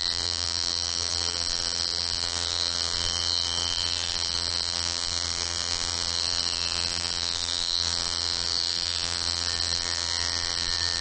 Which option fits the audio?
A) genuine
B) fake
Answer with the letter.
B